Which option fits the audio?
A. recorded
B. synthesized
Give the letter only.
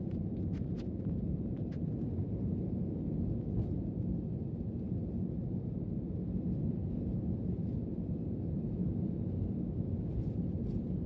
A